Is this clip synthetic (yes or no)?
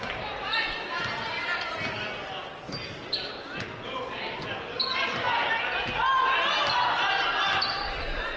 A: no